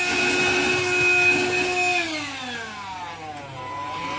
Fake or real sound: real